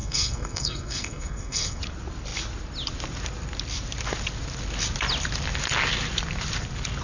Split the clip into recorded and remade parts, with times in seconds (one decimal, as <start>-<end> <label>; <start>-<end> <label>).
0.0-1.8 remade; 1.8-7.0 recorded